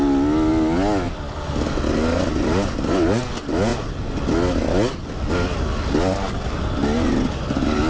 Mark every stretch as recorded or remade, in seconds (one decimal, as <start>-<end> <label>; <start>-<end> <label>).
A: 0.0-7.9 recorded